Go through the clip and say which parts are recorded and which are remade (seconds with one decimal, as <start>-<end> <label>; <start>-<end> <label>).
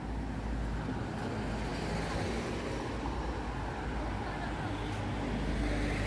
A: 0.0-6.1 recorded